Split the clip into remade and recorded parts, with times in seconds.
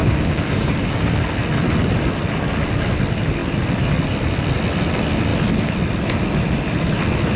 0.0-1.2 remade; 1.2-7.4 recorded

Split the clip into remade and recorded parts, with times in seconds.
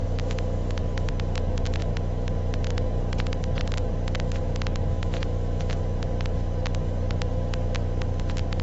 0.0-1.1 remade; 1.1-4.9 recorded; 4.9-5.8 remade; 5.8-8.6 recorded